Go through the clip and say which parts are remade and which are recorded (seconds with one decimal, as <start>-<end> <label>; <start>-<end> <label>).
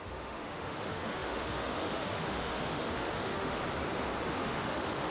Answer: 0.0-3.6 remade; 3.6-4.3 recorded; 4.3-5.1 remade